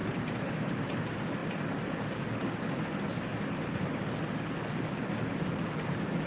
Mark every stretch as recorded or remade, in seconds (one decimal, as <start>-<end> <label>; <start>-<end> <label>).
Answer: 0.0-1.0 remade; 1.0-6.3 recorded